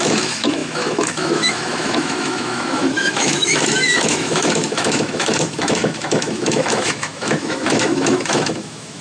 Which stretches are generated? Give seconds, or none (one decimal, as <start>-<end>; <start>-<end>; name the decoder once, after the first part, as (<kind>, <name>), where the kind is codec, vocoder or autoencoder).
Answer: 0.0-9.0 (autoencoder, DAC-VAE)